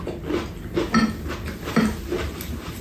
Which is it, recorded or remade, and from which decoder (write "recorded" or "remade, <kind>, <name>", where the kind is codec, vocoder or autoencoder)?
recorded